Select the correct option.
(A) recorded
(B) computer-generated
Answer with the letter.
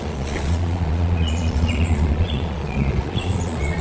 B